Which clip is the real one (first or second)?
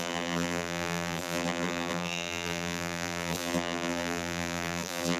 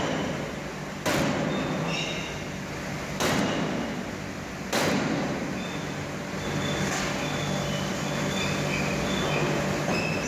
second